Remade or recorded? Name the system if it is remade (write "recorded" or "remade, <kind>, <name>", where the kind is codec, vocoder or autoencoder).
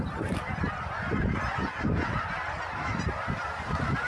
recorded